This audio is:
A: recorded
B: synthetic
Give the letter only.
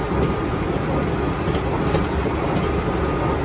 A